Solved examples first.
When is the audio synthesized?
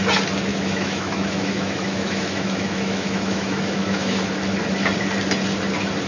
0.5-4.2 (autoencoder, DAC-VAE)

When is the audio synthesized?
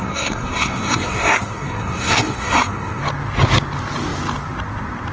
0.0-3.0 (codec, SNAC)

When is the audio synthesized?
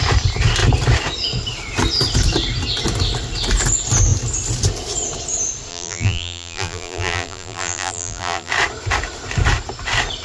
5.7-8.5 (vocoder, BigVGAN v2)